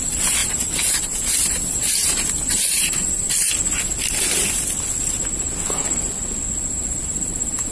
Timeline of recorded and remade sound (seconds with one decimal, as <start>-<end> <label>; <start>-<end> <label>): 0.0-0.4 recorded; 0.4-1.2 remade; 1.2-7.7 recorded